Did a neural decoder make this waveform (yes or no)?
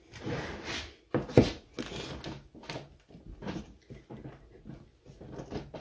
no